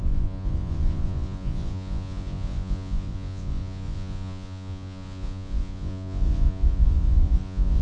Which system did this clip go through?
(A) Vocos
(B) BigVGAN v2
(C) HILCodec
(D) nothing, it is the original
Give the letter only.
A